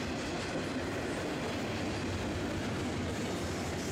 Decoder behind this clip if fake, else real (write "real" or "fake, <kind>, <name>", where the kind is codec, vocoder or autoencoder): real